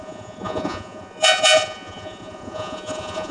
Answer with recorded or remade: remade